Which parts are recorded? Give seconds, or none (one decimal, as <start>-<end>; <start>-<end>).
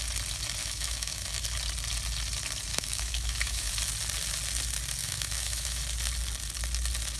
0.0-0.6; 1.4-2.7; 3.7-5.0; 5.8-7.2